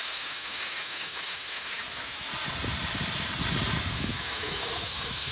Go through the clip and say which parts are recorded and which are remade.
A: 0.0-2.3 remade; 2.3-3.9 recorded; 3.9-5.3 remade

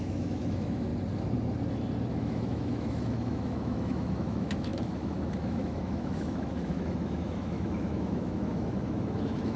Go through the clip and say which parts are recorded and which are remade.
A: 0.0-0.9 remade; 0.9-2.1 recorded; 2.1-9.6 remade